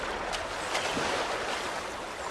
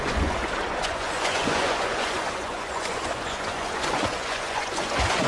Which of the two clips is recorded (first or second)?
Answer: first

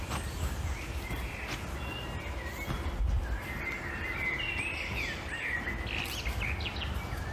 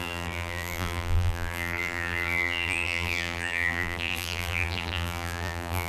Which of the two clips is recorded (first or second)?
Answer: first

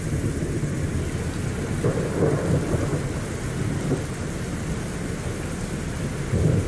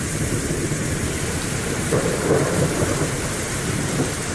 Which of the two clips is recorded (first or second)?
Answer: first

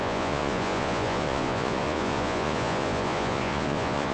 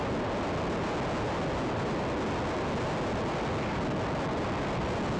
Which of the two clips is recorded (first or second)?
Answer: second